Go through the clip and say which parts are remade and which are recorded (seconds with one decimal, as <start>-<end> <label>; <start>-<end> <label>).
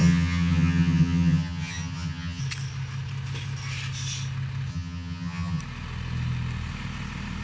0.0-2.4 remade; 2.4-4.7 recorded; 4.7-5.6 remade; 5.6-7.4 recorded